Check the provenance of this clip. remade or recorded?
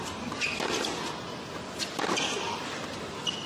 recorded